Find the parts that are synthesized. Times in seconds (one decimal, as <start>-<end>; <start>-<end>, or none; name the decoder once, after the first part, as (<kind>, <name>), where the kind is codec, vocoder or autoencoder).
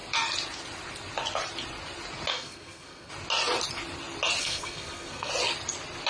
2.3-3.1 (codec, SNAC); 4.4-5.3